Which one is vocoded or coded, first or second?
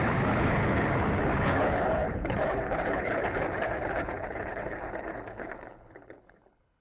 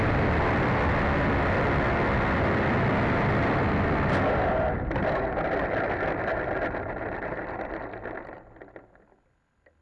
first